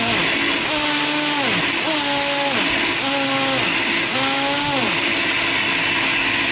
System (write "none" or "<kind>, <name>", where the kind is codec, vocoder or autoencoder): none